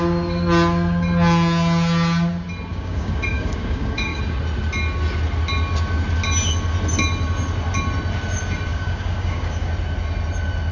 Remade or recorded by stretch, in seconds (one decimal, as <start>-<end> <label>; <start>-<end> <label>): 0.0-2.7 recorded; 2.7-4.2 remade; 4.2-8.7 recorded; 8.7-9.7 remade; 9.7-10.7 recorded